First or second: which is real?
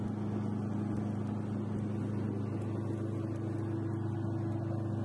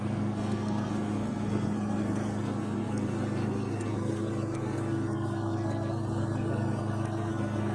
first